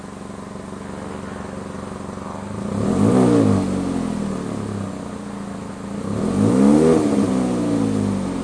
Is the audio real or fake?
real